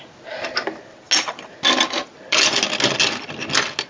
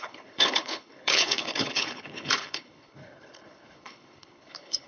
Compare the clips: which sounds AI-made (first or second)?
second